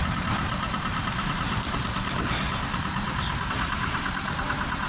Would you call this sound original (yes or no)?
no